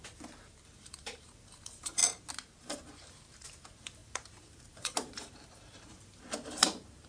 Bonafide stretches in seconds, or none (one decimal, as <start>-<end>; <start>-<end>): 0.0-0.9; 2.0-2.6